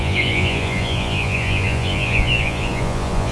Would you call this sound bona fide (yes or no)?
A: no